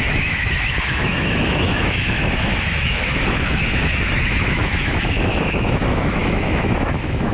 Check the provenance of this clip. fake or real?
fake